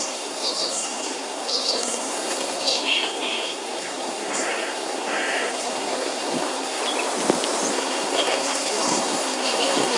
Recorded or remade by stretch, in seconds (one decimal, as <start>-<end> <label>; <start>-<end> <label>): 0.0-6.8 remade; 6.8-7.7 recorded; 7.7-10.0 remade